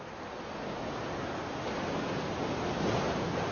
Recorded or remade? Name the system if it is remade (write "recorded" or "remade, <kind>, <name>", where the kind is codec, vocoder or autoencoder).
recorded